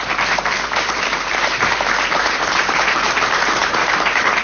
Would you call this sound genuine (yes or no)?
no